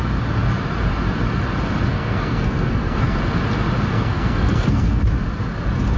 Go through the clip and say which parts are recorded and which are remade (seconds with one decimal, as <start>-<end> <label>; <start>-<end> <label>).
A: 0.0-1.9 recorded; 1.9-3.2 remade; 3.2-3.9 recorded; 3.9-5.0 remade; 5.0-6.0 recorded